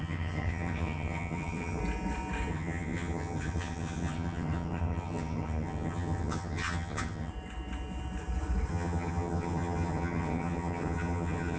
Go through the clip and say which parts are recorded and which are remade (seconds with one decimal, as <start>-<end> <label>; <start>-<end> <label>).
0.0-1.8 remade; 1.8-2.5 recorded; 2.5-7.3 remade; 7.3-8.7 recorded; 8.7-11.6 remade